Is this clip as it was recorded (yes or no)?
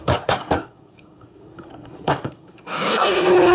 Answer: no